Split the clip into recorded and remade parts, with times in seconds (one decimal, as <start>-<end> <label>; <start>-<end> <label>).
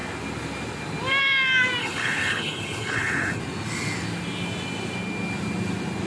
0.0-1.8 recorded; 1.8-3.4 remade; 3.4-6.1 recorded